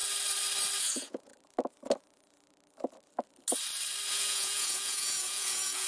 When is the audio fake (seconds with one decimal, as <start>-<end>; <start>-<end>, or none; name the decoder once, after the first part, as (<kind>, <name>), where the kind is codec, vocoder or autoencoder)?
0.8-1.3 (vocoder, Vocos); 4.1-5.9